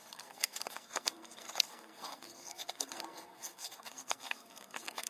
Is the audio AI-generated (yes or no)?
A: yes